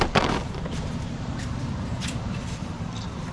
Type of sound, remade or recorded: remade